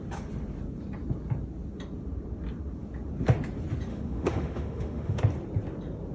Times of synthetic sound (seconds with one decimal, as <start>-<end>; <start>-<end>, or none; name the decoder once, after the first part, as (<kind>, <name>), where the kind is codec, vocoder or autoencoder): 3.9-5.2 (autoencoder, DAC-VAE)